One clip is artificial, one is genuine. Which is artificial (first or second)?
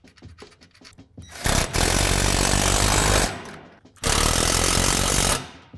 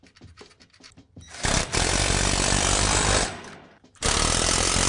second